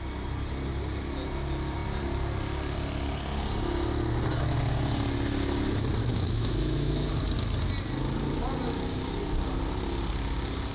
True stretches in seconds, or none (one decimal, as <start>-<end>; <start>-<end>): 0.0-6.0; 7.1-10.7